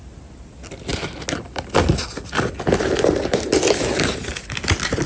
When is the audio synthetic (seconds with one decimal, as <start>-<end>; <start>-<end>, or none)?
none